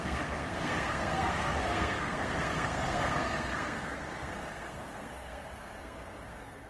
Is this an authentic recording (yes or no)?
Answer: no